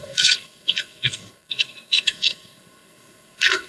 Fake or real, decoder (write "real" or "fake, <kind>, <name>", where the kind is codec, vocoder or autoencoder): fake, codec, SNAC